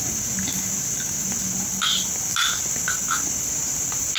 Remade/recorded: recorded